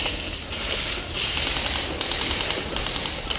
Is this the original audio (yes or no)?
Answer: yes